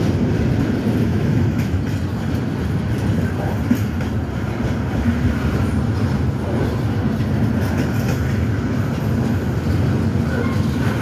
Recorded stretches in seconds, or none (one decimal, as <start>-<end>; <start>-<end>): 0.0-1.1; 1.8-11.0